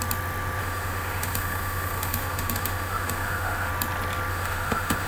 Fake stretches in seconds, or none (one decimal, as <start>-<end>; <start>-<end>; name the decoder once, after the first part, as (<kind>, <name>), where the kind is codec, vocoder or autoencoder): 0.6-3.7 (autoencoder, DAC-VAE); 4.3-5.1